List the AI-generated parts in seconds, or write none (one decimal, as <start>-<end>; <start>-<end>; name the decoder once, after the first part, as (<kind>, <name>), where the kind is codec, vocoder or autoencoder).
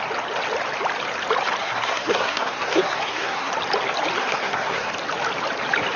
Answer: 1.6-3.5 (codec, SNAC); 4.2-4.9